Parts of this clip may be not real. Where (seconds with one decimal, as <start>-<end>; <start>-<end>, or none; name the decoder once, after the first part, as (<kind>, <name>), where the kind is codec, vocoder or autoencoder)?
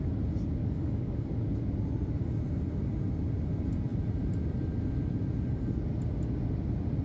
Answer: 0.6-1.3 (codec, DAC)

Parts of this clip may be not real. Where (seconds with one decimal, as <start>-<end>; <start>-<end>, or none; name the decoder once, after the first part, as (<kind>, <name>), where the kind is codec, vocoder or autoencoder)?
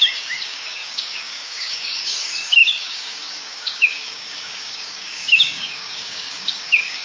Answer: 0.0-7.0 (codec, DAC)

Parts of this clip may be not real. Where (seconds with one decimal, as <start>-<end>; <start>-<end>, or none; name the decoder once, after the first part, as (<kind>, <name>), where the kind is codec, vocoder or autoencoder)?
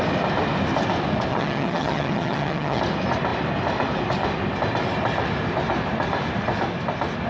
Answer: 1.3-2.8 (vocoder, HiFi-GAN)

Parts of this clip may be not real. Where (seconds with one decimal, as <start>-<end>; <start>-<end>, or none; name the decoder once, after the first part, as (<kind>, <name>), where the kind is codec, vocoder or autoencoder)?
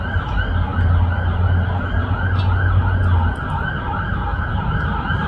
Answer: none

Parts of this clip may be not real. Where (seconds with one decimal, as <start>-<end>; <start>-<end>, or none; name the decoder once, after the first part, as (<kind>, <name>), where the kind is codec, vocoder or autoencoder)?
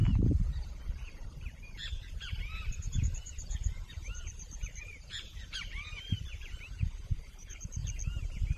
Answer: 0.0-7.8 (vocoder, BigVGAN v2)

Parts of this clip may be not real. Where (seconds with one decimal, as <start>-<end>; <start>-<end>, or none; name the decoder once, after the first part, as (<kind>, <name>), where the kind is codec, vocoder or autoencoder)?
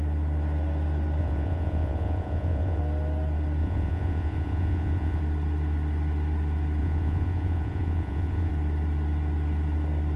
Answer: 1.2-2.8 (vocoder, Vocos); 3.6-5.2; 6.8-8.5